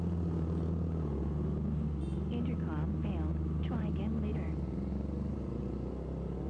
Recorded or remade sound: recorded